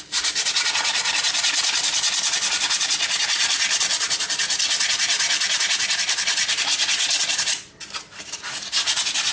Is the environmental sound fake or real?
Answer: real